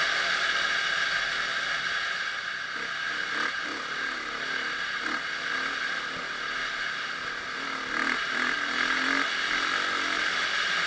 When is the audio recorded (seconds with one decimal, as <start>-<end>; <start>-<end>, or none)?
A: 0.0-10.9